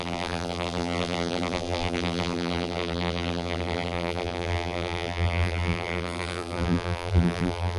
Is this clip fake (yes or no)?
yes